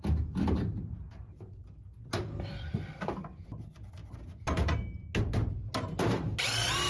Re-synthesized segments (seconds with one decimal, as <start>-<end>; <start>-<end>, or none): none